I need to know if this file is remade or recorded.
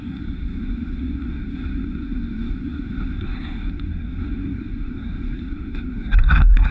remade